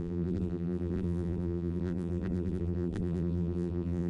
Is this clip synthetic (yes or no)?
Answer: yes